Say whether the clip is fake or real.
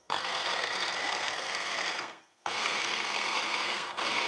fake